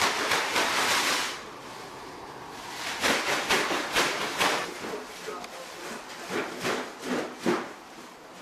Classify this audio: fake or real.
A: fake